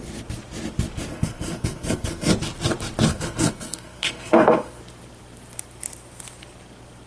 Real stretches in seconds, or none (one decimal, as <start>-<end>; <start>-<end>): 0.0-1.1; 2.3-3.1; 4.8-7.1